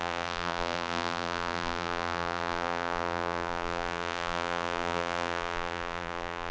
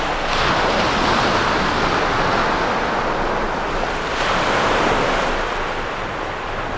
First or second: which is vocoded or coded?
first